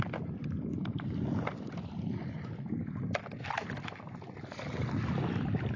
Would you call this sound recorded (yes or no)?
yes